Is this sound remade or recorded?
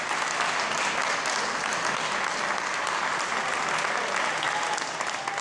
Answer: recorded